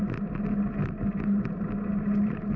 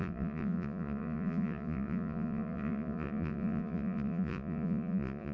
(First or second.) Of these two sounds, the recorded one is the first